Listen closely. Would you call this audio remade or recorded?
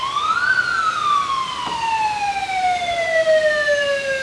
recorded